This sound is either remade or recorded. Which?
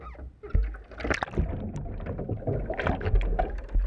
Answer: recorded